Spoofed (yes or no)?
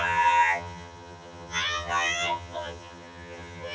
yes